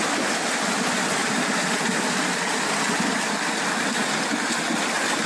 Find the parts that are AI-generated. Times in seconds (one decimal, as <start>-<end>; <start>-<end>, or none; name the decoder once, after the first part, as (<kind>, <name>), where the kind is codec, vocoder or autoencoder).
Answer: 1.2-3.0 (vocoder, BigVGAN v2)